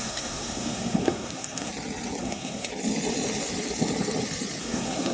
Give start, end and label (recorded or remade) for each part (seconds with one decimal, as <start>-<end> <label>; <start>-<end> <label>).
0.0-1.7 remade; 1.7-2.2 recorded; 2.2-2.7 remade; 2.7-4.6 recorded; 4.6-5.1 remade